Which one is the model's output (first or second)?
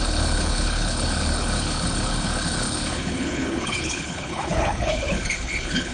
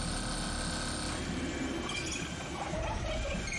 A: first